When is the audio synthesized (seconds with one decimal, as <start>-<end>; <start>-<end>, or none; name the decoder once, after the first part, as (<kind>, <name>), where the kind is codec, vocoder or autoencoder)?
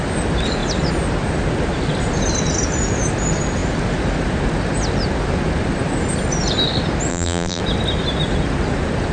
7.1-7.6 (vocoder, BigVGAN v2)